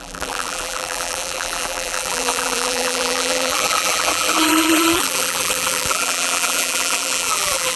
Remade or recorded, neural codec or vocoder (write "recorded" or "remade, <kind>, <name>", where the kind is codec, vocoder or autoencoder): remade, vocoder, BigVGAN v2